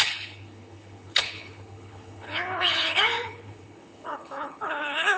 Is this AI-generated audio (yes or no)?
yes